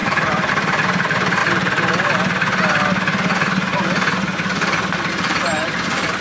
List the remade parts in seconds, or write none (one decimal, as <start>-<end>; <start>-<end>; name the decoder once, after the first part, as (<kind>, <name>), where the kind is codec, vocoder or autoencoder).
0.0-1.4 (vocoder, BigVGAN v2); 5.1-6.2